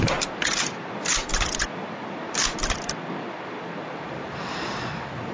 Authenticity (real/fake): real